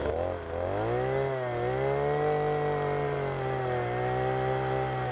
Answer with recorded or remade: recorded